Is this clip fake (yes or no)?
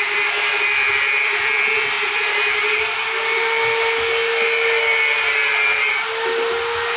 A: no